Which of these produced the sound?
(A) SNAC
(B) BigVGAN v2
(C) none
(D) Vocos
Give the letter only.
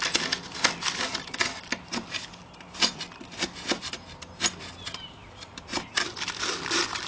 C